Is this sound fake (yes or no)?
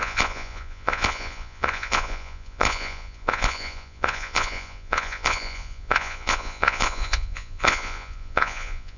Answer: yes